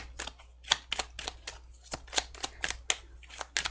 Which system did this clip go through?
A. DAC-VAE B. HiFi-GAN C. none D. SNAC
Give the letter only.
C